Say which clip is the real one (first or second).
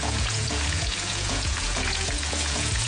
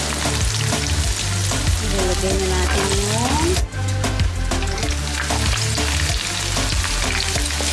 second